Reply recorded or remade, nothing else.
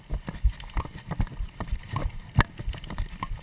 recorded